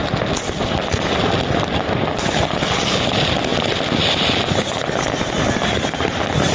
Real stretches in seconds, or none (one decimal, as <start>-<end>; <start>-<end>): 0.0-6.5